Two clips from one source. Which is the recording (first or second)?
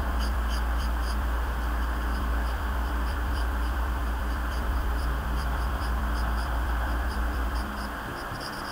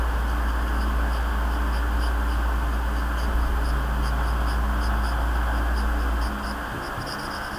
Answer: second